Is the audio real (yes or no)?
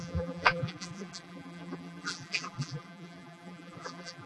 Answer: no